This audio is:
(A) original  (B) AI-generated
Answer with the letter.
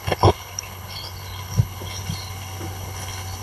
B